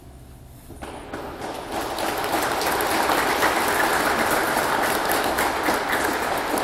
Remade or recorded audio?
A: recorded